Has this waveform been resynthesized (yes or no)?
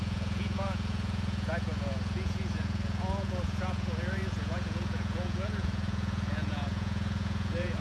yes